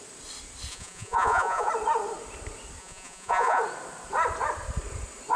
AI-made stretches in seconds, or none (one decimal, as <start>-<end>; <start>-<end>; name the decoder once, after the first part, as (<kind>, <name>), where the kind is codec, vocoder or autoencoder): 0.7-1.7 (vocoder, Vocos); 2.8-3.6